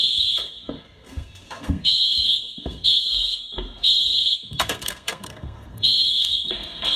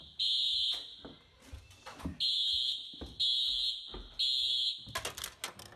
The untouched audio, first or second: second